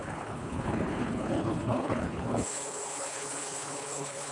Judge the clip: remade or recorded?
remade